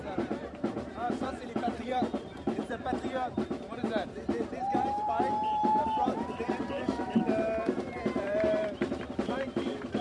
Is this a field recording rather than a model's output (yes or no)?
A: no